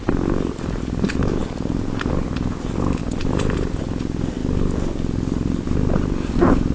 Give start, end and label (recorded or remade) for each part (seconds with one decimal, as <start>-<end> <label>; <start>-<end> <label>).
0.0-6.7 recorded